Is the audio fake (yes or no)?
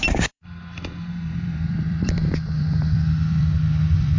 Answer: yes